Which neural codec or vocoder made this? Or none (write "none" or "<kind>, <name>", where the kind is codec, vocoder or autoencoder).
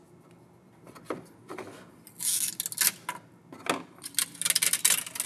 none